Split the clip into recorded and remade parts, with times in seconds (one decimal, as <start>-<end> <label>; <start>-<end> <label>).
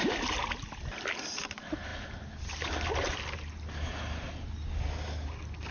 0.0-5.7 recorded